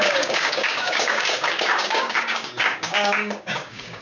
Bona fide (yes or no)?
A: no